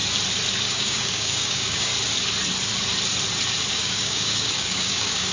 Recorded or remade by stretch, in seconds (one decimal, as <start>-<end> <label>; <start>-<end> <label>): 0.0-0.6 recorded; 0.6-1.9 remade; 1.9-3.7 recorded; 3.7-5.3 remade